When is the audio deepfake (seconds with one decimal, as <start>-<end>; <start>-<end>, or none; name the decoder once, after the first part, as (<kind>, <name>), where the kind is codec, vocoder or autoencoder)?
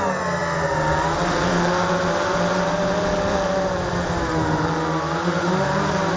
none